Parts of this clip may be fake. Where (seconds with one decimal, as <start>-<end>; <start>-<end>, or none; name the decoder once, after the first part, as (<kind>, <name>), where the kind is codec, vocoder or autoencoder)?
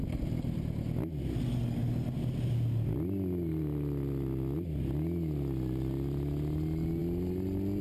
none